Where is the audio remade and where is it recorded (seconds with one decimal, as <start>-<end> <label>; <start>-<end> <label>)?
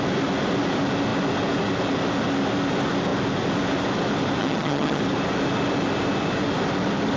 0.0-4.4 recorded; 4.4-5.0 remade; 5.0-7.2 recorded